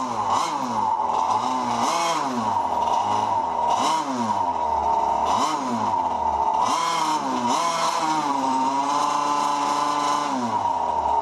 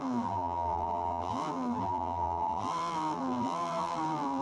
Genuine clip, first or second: first